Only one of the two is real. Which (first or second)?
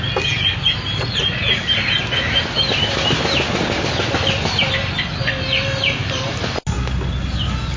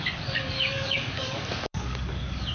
first